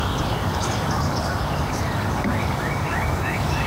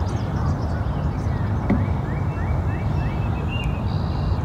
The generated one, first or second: first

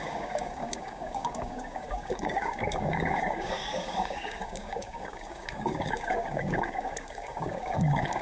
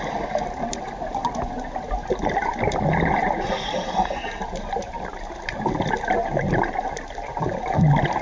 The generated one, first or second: first